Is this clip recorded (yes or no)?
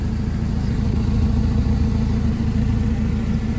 yes